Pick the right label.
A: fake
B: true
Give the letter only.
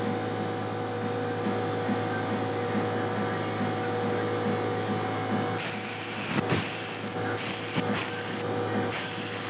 B